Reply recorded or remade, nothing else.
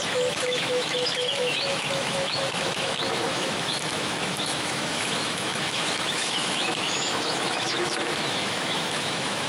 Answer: remade